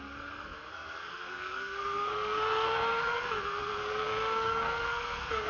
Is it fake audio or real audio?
fake